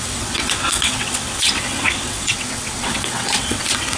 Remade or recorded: remade